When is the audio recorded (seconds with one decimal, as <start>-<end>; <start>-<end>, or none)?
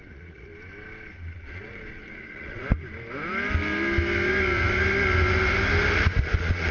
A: 0.5-1.3; 2.6-6.2